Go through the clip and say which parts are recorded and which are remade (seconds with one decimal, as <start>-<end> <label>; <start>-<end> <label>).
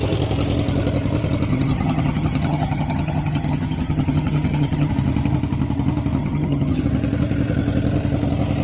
0.0-1.5 recorded; 1.5-4.9 remade; 4.9-6.2 recorded; 6.2-6.8 remade; 6.8-8.6 recorded